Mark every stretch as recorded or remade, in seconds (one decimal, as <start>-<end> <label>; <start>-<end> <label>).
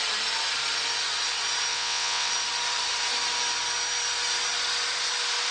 0.0-1.7 recorded; 1.7-2.3 remade; 2.3-5.5 recorded